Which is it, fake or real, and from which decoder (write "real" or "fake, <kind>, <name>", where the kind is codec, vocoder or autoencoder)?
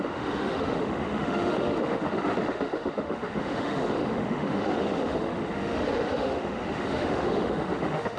fake, autoencoder, DAC-VAE